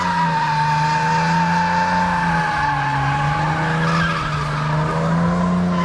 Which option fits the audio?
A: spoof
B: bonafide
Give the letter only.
B